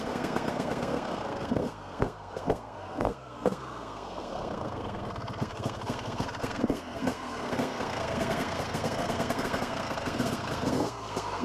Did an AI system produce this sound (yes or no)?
yes